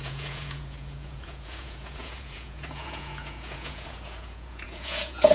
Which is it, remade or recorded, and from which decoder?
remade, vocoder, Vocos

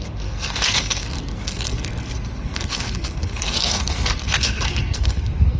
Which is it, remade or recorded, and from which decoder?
remade, codec, SNAC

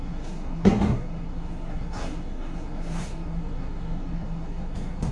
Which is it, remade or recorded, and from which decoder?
remade, codec, SNAC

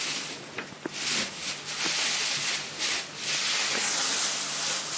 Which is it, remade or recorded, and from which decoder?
recorded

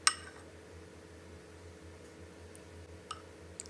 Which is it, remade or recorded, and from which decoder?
recorded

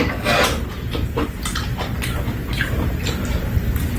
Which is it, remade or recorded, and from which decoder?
recorded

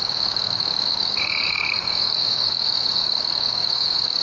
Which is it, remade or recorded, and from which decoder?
remade, codec, DAC